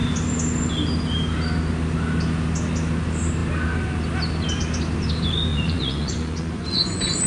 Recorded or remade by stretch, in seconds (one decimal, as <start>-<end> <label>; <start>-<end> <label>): 0.0-5.5 recorded; 5.5-7.3 remade